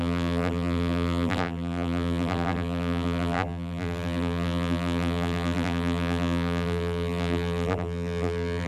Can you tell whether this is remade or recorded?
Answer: remade